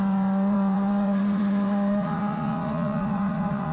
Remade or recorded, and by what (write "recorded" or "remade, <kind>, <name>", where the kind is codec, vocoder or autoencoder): remade, vocoder, Vocos